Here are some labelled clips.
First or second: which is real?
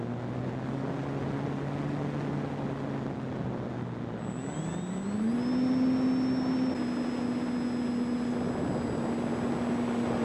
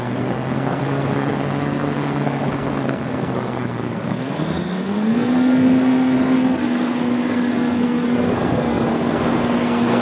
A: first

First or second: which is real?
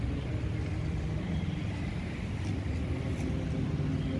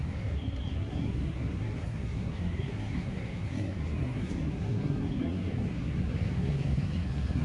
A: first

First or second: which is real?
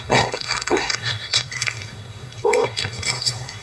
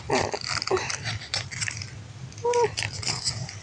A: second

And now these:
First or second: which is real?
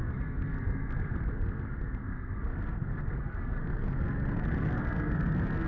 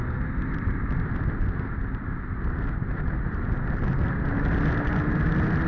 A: second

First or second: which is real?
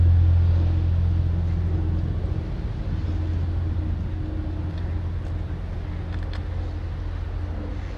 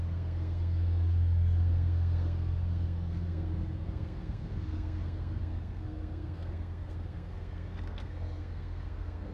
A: first